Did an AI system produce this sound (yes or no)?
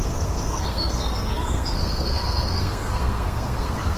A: yes